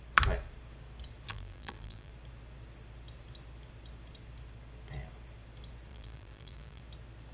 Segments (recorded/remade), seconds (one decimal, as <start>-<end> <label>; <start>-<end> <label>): 0.0-1.3 recorded; 1.3-2.1 remade; 2.1-5.9 recorded; 5.9-6.8 remade; 6.8-7.3 recorded